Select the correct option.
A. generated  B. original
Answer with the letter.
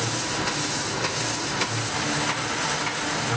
B